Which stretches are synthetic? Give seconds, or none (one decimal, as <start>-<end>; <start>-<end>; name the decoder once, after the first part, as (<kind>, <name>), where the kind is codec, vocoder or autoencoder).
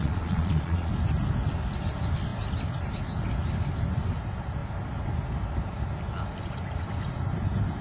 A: 0.0-0.9 (vocoder, Vocos)